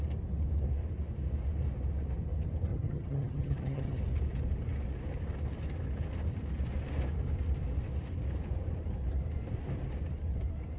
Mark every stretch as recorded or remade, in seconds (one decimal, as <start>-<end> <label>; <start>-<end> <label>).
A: 0.0-2.7 recorded; 2.7-4.0 remade; 4.0-10.8 recorded